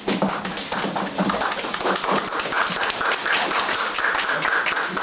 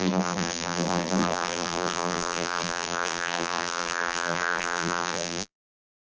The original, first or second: first